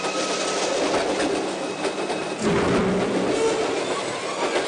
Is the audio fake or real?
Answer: real